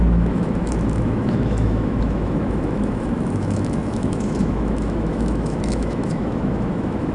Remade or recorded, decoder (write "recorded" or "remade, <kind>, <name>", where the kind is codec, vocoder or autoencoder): remade, autoencoder, DAC-VAE